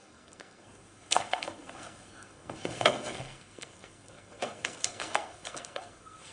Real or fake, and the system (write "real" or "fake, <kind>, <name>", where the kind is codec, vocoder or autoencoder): fake, codec, SNAC